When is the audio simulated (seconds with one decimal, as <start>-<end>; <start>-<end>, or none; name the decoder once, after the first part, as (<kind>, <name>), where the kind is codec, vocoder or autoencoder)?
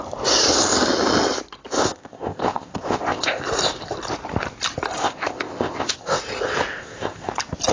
1.8-3.4 (codec, ZipCodec); 5.0-6.2; 6.7-7.3